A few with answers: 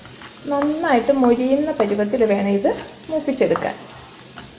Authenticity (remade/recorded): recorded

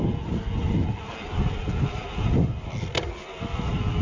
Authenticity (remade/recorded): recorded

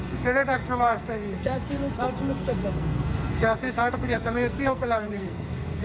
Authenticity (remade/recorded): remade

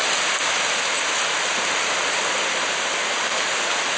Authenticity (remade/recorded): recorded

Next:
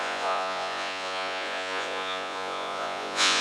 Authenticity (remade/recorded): remade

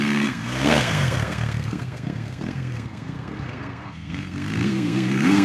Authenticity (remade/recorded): remade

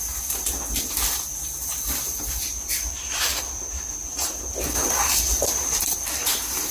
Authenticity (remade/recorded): recorded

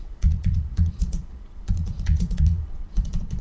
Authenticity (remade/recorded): remade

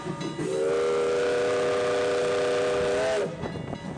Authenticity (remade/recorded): recorded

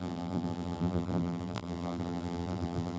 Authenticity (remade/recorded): remade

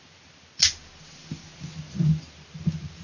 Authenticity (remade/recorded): recorded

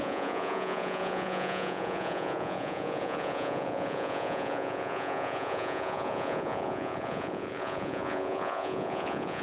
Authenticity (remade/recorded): remade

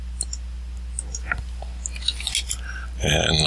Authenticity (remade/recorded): recorded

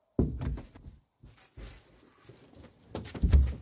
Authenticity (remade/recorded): recorded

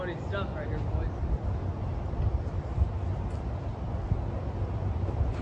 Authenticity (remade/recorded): recorded